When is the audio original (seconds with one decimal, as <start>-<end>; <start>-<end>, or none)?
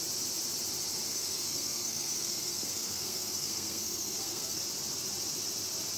0.0-1.1; 4.6-6.0